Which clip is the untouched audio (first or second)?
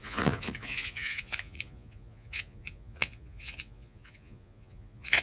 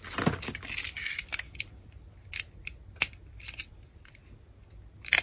second